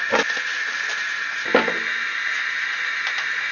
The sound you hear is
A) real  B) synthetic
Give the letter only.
A